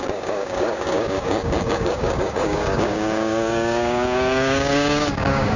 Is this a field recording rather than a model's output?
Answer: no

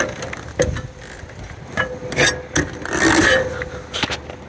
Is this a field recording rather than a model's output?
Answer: yes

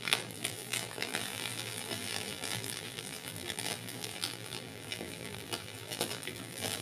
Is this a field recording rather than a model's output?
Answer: no